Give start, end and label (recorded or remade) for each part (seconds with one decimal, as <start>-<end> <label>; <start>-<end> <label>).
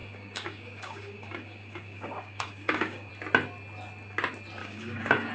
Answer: 0.0-3.1 remade; 3.1-4.6 recorded; 4.6-5.3 remade